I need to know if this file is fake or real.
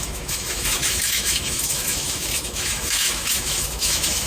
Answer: fake